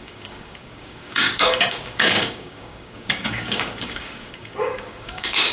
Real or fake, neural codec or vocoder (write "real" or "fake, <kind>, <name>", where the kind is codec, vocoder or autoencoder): fake, codec, DAC